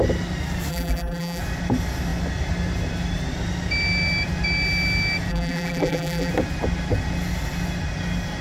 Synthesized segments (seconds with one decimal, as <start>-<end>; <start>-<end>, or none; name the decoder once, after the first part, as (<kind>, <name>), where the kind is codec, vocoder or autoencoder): 0.7-1.4 (vocoder, BigVGAN v2); 5.3-6.3